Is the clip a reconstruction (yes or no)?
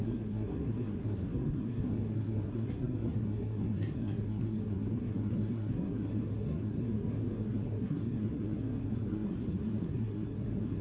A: yes